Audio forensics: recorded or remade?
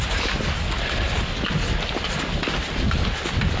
recorded